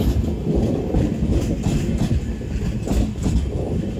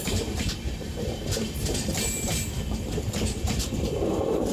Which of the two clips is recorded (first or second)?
first